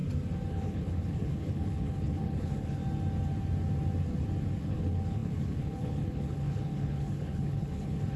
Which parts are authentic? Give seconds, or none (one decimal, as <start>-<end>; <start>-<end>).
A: 0.0-0.5; 2.8-4.6